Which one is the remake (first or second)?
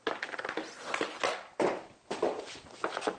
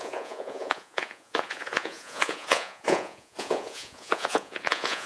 second